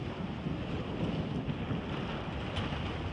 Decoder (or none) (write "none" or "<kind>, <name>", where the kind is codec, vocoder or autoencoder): none